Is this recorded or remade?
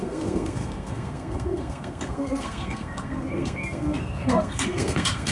remade